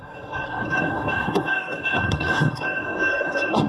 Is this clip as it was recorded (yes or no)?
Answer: no